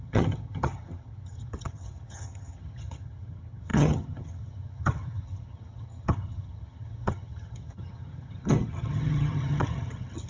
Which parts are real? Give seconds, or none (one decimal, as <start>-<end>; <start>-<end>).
none